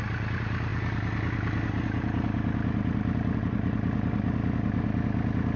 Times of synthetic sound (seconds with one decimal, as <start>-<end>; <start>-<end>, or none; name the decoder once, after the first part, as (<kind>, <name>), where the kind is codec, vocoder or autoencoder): none